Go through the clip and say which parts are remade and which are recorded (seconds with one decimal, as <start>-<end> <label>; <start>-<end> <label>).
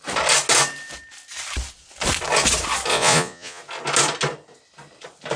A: 0.0-2.9 recorded; 2.9-3.6 remade; 3.6-5.4 recorded